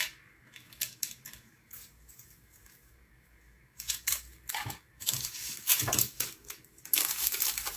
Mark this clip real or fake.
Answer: fake